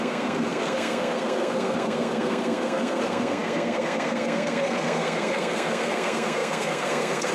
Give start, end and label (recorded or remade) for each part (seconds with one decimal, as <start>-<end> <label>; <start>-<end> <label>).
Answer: 0.0-7.3 remade